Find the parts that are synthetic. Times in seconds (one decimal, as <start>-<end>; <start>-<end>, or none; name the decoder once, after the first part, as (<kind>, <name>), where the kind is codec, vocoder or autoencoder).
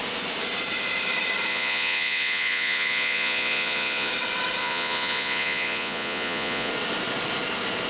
1.5-4.1 (vocoder, Vocos); 4.6-6.7